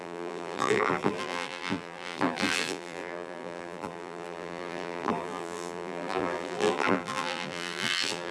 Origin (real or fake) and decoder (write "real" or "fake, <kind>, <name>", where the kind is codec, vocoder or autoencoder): fake, vocoder, BigVGAN v2